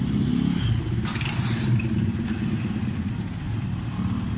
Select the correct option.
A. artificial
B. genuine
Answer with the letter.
B